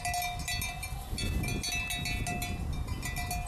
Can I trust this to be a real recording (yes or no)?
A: yes